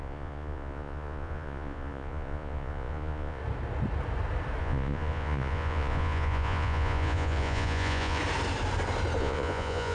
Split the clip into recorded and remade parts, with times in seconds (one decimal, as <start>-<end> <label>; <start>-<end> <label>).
0.0-3.4 remade; 3.4-4.6 recorded; 4.6-8.2 remade; 8.2-9.2 recorded; 9.2-9.9 remade